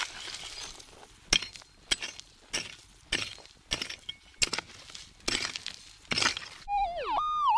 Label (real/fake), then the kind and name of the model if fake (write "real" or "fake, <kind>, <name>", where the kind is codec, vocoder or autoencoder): real